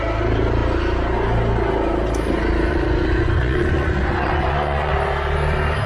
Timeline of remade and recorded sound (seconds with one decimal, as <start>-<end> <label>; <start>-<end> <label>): 0.0-2.7 recorded; 2.7-4.9 remade; 4.9-5.9 recorded